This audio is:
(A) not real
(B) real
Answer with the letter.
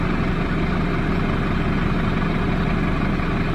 B